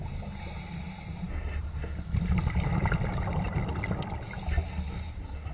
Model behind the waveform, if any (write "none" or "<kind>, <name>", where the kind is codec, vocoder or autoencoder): none